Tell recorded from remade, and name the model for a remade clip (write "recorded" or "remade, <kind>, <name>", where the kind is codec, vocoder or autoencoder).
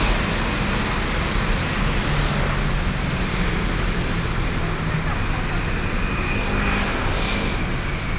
recorded